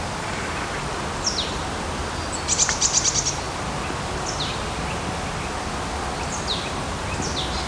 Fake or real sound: real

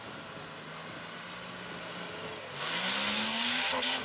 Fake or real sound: real